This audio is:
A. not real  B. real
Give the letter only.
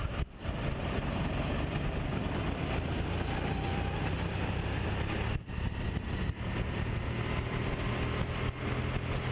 B